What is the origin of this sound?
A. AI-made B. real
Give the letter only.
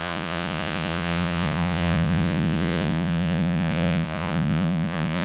A